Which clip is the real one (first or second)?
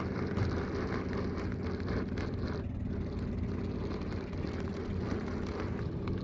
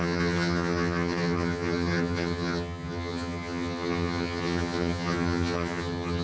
first